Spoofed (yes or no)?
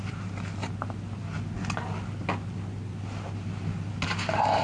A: no